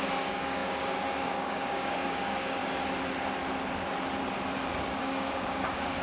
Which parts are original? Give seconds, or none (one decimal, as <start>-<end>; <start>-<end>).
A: 2.6-5.0